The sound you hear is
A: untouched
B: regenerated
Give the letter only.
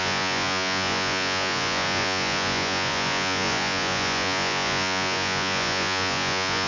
B